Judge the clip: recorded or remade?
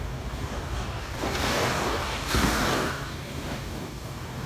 remade